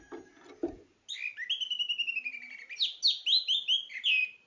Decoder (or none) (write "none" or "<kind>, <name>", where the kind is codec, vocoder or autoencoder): none